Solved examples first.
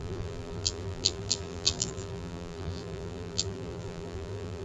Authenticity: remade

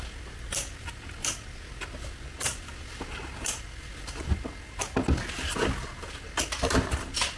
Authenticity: recorded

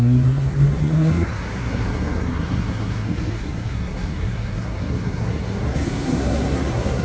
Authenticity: remade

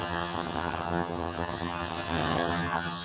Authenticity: remade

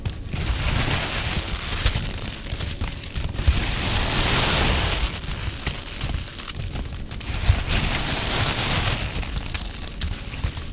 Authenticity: recorded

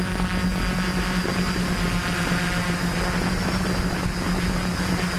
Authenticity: recorded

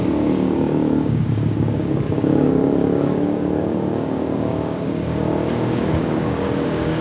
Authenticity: remade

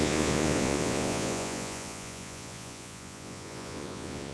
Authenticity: remade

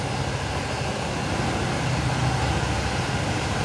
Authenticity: recorded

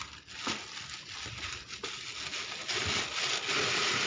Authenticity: recorded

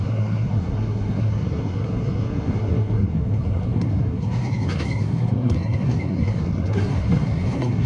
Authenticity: remade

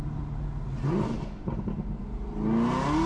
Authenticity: recorded